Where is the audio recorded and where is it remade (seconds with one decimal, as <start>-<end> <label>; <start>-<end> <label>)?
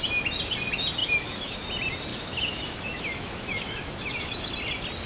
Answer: 0.0-1.0 recorded; 1.0-1.7 remade; 1.7-2.1 recorded; 2.1-4.5 remade; 4.5-5.1 recorded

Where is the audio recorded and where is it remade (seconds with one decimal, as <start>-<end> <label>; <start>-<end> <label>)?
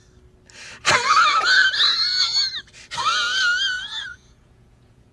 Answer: 0.0-3.8 recorded; 3.8-5.1 remade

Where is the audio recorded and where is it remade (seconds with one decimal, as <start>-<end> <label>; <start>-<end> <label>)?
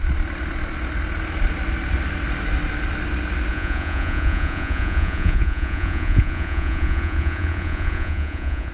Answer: 0.0-3.5 recorded; 3.5-8.7 remade